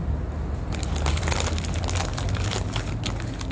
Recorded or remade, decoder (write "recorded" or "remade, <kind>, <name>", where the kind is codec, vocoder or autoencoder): recorded